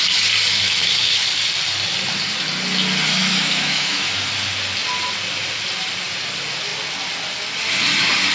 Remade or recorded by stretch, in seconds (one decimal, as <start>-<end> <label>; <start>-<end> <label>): 0.0-0.5 recorded; 0.5-1.2 remade; 1.2-3.2 recorded; 3.2-4.1 remade; 4.1-8.3 recorded

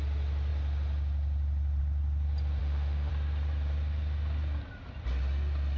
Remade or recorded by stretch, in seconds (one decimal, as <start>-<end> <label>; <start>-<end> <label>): 0.0-2.6 recorded; 2.6-3.1 remade; 3.1-5.8 recorded

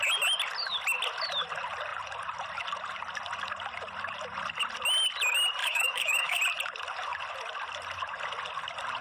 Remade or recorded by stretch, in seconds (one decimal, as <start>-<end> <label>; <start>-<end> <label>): 0.0-5.6 recorded; 5.6-6.4 remade; 6.4-9.0 recorded

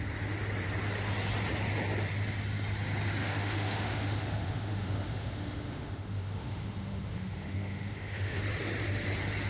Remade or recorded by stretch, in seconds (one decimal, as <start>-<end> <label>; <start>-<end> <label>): 0.0-3.2 recorded; 3.2-8.4 remade; 8.4-9.5 recorded

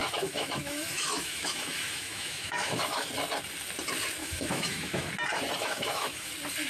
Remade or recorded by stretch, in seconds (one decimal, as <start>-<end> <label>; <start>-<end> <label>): 0.0-3.1 remade; 3.1-4.2 recorded; 4.2-5.1 remade; 5.1-5.6 recorded; 5.6-6.3 remade; 6.3-6.7 recorded

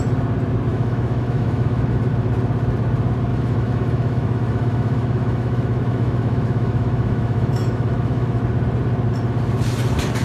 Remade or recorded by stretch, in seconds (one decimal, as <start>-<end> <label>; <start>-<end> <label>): 0.0-0.7 recorded; 0.7-2.0 remade; 2.0-3.3 recorded; 3.3-8.4 remade; 8.4-10.2 recorded